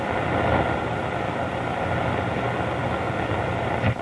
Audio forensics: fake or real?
fake